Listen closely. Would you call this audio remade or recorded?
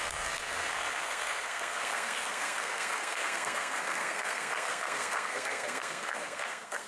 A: remade